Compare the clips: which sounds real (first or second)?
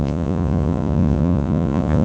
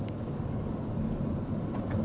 second